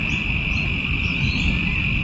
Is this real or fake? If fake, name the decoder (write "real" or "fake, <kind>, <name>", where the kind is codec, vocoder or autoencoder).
real